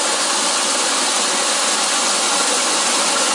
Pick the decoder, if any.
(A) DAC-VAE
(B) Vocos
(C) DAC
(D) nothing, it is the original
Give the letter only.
B